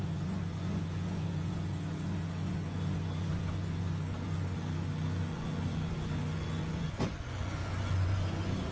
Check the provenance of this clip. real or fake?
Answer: fake